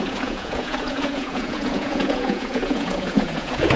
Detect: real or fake fake